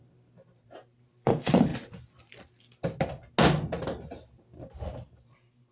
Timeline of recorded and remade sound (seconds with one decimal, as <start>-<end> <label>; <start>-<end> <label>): 0.0-1.7 remade; 1.7-5.1 recorded; 5.1-5.7 remade